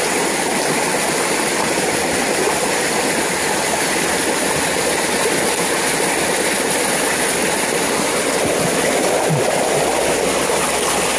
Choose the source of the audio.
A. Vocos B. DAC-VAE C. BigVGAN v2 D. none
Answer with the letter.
D